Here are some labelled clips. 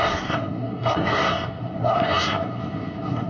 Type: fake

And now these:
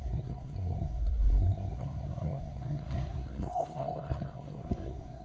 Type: fake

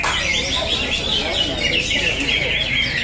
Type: real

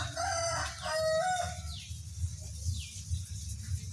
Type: real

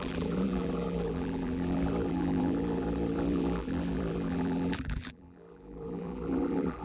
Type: fake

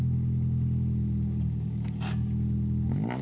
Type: real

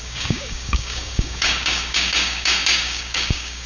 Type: fake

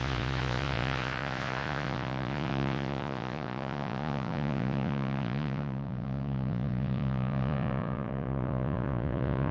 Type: fake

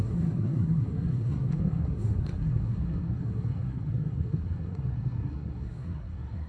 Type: fake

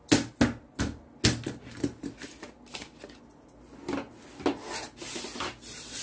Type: real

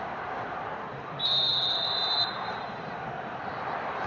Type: fake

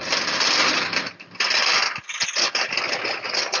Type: real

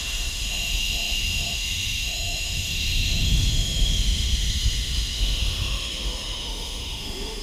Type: fake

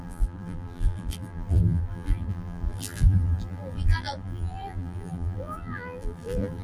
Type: fake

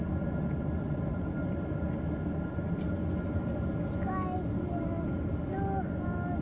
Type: real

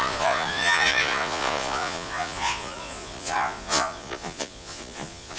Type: fake